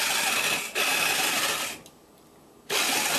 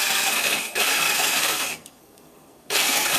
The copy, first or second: second